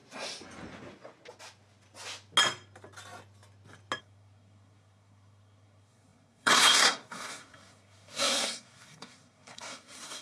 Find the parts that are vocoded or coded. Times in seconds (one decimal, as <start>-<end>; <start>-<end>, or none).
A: 4.0-10.2